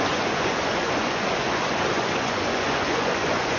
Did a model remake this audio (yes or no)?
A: yes